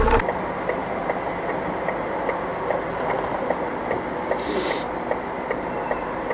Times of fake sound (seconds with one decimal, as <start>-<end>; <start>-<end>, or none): none